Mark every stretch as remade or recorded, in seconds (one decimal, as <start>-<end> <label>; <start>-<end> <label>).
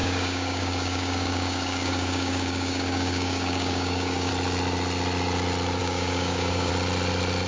0.0-4.3 remade; 4.3-5.8 recorded; 5.8-6.7 remade; 6.7-7.5 recorded